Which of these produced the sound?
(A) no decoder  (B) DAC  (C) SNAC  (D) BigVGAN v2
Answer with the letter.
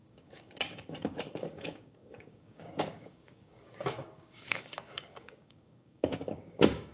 B